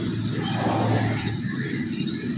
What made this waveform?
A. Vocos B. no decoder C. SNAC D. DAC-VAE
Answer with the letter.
B